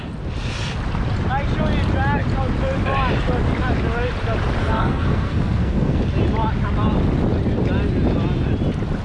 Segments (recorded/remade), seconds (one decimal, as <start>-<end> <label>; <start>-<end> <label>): 0.0-4.6 recorded; 4.6-6.0 remade; 6.0-9.0 recorded